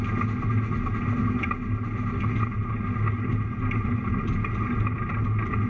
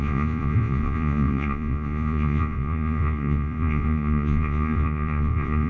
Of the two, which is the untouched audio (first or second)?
first